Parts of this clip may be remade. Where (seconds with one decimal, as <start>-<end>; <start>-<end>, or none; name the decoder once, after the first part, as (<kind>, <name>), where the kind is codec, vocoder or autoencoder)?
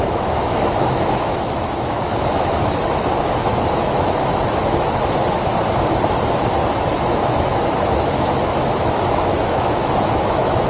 0.0-5.5 (autoencoder, DAC-VAE); 6.8-10.7